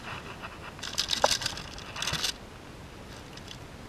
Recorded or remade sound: recorded